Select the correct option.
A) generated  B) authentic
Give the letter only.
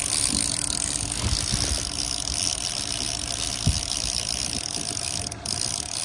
B